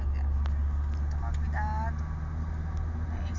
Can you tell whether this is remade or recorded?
recorded